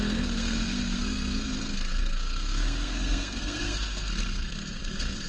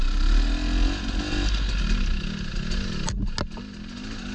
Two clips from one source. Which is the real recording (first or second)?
second